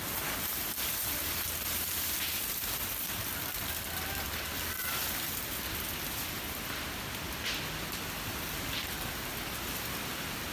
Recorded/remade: recorded